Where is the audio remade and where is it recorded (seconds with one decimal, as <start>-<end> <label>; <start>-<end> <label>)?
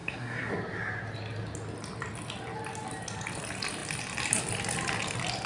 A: 0.0-0.5 remade; 0.5-5.5 recorded